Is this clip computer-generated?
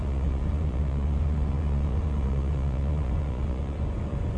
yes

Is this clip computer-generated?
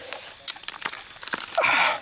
no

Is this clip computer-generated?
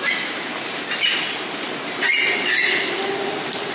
no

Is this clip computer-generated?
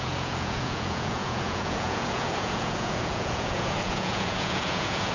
yes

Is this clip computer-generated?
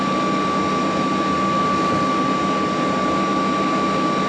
no